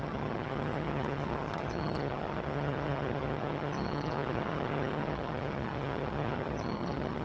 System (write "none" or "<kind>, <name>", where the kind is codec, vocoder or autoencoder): vocoder, HiFi-GAN